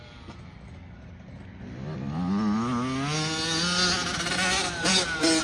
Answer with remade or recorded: recorded